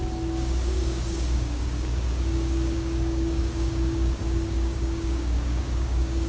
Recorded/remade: remade